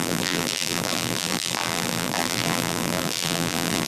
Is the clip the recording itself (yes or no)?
no